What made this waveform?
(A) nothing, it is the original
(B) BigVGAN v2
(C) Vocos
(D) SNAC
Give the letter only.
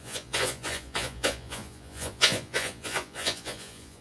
C